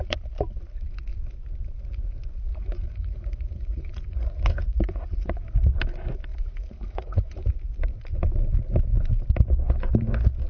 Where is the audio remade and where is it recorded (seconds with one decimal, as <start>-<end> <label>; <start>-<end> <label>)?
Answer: 0.0-2.5 recorded; 2.5-5.4 remade; 5.4-6.3 recorded; 6.3-7.5 remade; 7.5-10.5 recorded